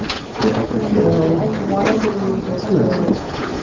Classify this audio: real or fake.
real